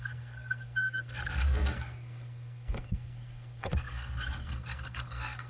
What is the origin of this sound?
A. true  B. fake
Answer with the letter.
B